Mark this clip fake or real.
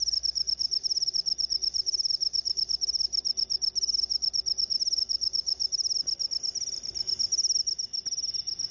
real